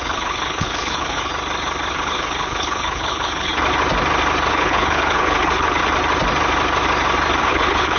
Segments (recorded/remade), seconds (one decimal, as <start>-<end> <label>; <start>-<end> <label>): 0.0-1.3 remade; 1.3-1.9 recorded; 1.9-3.5 remade; 3.5-4.5 recorded; 4.5-5.8 remade; 5.8-7.4 recorded; 7.4-8.0 remade